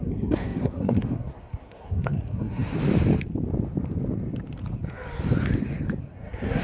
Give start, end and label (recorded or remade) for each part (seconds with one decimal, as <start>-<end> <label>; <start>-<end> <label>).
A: 0.0-2.7 remade; 2.7-6.0 recorded; 6.0-6.6 remade